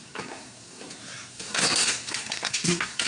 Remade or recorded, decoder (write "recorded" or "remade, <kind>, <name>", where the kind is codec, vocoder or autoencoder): remade, codec, SNAC